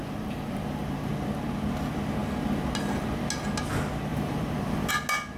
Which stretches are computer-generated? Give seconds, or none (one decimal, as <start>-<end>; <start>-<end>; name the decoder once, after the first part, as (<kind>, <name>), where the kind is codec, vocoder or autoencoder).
0.0-1.1 (vocoder, BigVGAN v2); 4.1-4.9